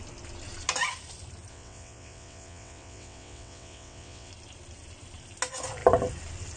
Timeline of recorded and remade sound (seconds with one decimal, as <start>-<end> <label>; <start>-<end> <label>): 0.0-1.5 recorded; 1.5-4.3 remade; 4.3-6.6 recorded